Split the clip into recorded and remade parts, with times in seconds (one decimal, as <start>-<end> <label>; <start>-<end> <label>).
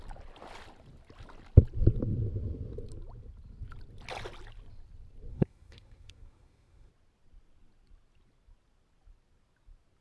0.0-5.3 recorded; 5.3-6.9 remade; 6.9-10.0 recorded